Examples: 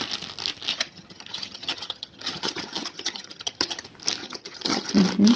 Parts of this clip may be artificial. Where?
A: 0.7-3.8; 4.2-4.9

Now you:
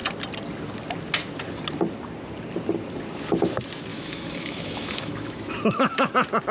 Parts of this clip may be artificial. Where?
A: 3.9-6.1

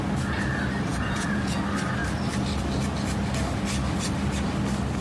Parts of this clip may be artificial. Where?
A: 0.9-1.6

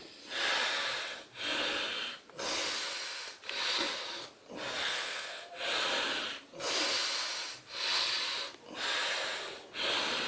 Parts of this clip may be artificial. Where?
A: 4.8-5.5

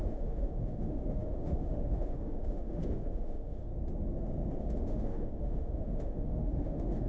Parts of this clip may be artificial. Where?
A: 0.0-3.7; 4.6-7.1

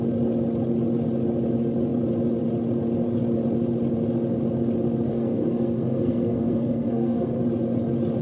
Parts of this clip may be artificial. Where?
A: 5.1-7.4

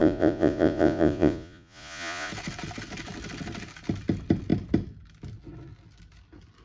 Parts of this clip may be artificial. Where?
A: 0.0-2.3